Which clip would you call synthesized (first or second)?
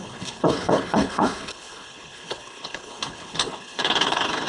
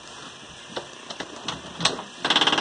first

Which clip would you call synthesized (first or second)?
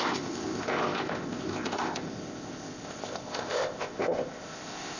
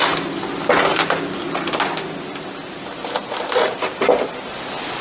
first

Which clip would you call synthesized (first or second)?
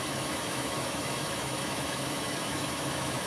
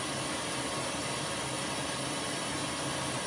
first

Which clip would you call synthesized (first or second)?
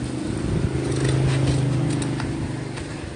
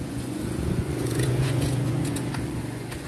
second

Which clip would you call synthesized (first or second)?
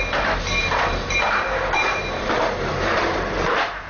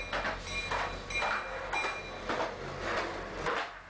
first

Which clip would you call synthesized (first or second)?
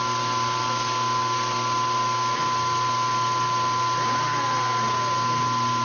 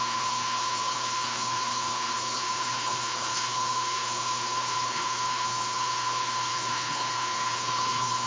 second